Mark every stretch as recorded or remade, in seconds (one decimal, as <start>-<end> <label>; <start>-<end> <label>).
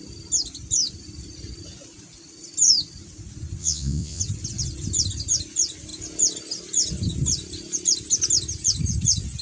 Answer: 0.0-3.6 recorded; 3.6-4.2 remade; 4.2-9.4 recorded